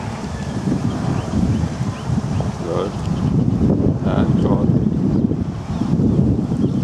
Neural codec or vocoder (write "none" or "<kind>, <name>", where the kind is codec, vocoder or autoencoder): vocoder, BigVGAN v2